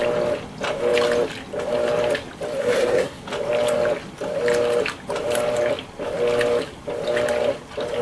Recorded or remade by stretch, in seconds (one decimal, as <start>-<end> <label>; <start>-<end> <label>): 0.0-2.6 recorded; 2.6-3.2 remade; 3.2-8.0 recorded